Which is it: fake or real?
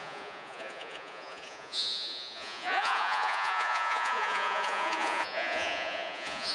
fake